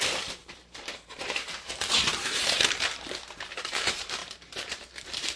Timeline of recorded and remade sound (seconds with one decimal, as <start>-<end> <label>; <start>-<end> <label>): 0.0-5.4 remade